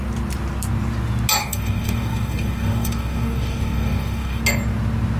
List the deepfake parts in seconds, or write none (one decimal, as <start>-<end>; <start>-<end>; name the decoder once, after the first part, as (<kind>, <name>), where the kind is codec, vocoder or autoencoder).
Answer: 1.4-4.4 (codec, DAC)